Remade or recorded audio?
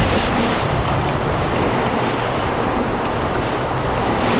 remade